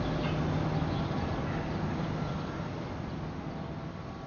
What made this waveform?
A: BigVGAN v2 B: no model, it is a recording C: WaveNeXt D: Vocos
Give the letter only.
B